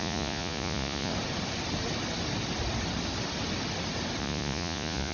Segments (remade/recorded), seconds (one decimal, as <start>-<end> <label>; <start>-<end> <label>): 0.0-1.1 remade; 1.1-4.2 recorded; 4.2-5.1 remade